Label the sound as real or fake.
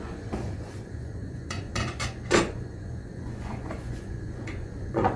fake